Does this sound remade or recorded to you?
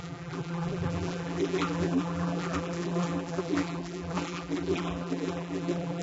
remade